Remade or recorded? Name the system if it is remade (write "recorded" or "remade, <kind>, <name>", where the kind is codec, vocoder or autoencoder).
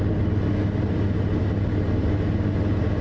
recorded